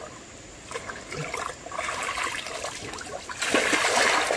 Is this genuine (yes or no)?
yes